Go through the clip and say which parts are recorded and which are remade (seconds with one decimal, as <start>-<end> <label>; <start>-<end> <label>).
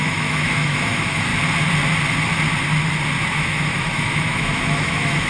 0.0-1.3 remade; 1.3-3.3 recorded; 3.3-5.3 remade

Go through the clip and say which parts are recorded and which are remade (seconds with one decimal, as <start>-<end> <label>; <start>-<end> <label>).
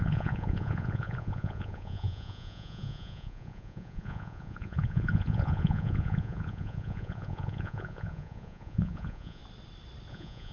0.0-9.4 remade; 9.4-10.1 recorded; 10.1-10.5 remade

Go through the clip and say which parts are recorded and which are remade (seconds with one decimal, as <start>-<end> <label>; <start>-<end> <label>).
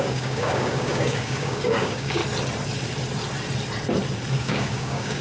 0.0-2.2 remade; 2.2-4.3 recorded; 4.3-5.2 remade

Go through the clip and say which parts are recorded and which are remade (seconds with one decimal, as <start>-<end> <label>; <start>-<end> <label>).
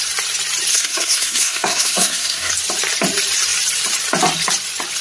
0.0-0.7 recorded; 0.7-2.5 remade; 2.5-5.0 recorded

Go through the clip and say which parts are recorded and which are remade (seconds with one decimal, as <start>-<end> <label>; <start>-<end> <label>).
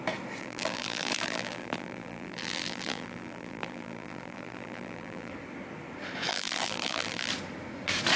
0.0-0.4 recorded; 0.4-5.3 remade; 5.3-6.3 recorded; 6.3-7.3 remade; 7.3-8.2 recorded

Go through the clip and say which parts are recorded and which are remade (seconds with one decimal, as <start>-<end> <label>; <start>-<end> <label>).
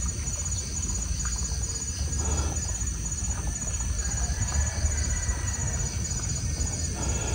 0.0-7.3 recorded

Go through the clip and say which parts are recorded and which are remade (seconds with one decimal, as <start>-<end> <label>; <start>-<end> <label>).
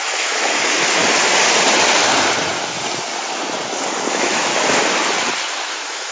0.0-1.0 remade; 1.0-4.1 recorded; 4.1-4.5 remade; 4.5-5.6 recorded; 5.6-6.1 remade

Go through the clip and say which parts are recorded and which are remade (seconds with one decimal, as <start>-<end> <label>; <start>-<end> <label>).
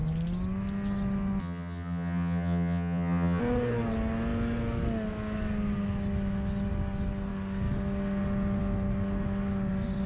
0.0-1.4 recorded; 1.4-3.4 remade; 3.4-10.1 recorded